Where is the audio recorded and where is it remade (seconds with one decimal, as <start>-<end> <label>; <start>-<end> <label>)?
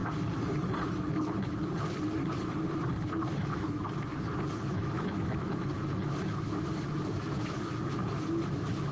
0.0-3.3 recorded; 3.3-3.9 remade; 3.9-4.7 recorded; 4.7-8.1 remade; 8.1-8.9 recorded